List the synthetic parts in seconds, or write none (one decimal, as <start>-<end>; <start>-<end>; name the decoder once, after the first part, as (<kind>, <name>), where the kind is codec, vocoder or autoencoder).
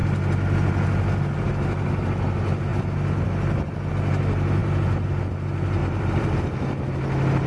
4.6-5.2 (vocoder, BigVGAN v2); 5.8-6.4